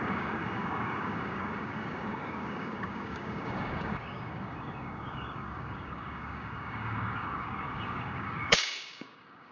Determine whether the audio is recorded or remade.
remade